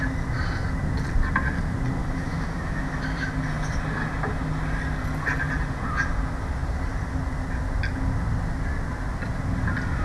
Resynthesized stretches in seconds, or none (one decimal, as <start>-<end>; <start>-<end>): 2.0-2.9